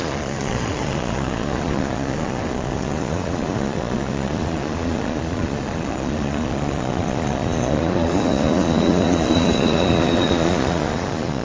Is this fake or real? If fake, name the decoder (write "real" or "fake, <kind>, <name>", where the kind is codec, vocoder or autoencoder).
fake, vocoder, Vocos